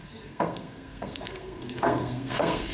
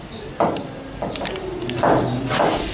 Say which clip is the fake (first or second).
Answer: first